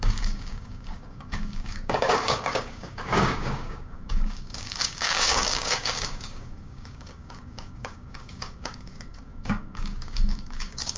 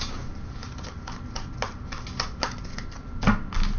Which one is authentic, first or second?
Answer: second